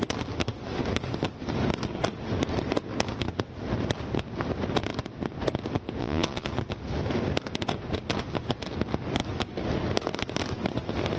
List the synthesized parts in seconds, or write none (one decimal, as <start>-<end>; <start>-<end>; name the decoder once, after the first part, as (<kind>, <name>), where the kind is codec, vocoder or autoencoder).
6.0-6.5 (vocoder, Vocos)